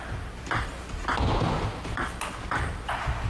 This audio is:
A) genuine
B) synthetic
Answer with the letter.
A